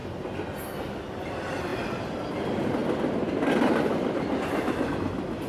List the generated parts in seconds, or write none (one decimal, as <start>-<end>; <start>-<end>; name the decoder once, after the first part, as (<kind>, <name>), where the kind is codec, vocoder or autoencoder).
0.6-2.8 (vocoder, BigVGAN v2); 3.8-5.5